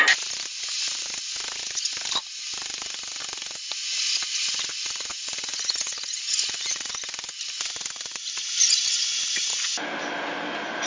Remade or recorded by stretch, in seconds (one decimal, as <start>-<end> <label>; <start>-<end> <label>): 0.0-5.1 recorded; 5.1-6.9 remade; 6.9-10.9 recorded